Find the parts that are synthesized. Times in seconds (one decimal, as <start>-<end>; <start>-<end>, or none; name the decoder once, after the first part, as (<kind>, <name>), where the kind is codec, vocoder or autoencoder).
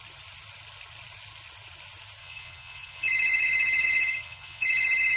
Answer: 2.2-5.2 (vocoder, WaveNeXt)